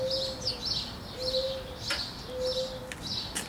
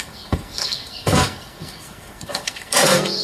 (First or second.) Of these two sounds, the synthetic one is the second